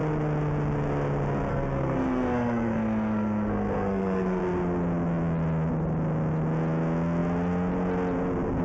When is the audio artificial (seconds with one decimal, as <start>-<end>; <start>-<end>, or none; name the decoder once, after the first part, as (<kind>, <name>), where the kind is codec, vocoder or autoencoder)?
1.5-4.4 (codec, SNAC)